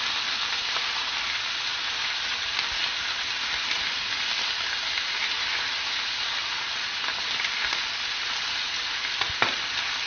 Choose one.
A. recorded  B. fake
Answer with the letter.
A